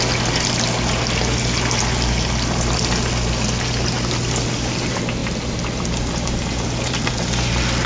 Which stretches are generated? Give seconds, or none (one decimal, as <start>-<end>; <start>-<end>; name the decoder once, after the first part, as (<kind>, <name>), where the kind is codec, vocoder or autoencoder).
5.2-7.1 (vocoder, BigVGAN v2)